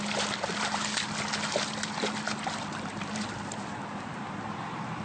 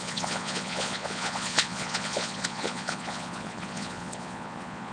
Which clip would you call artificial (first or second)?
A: second